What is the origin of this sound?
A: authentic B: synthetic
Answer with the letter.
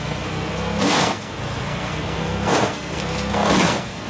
B